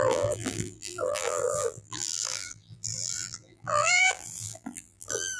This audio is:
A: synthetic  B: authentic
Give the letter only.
A